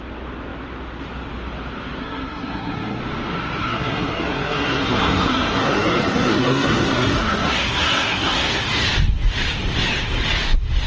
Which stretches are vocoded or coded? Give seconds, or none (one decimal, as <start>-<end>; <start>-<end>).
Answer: 2.0-3.0; 3.6-8.6